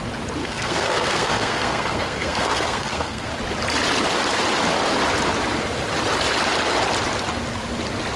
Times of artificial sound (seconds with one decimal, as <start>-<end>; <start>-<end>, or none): 0.4-3.3